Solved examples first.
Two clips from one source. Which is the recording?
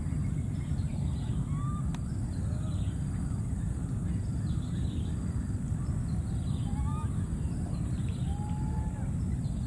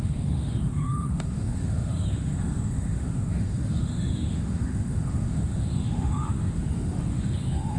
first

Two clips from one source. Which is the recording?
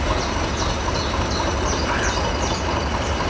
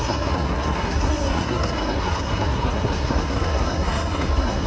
first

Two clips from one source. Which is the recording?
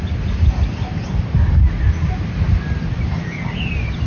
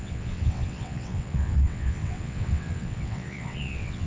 first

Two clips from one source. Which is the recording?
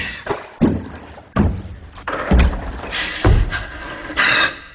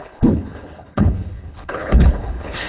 first